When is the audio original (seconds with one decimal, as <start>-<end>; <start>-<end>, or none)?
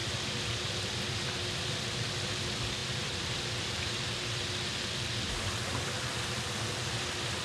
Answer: 0.0-0.7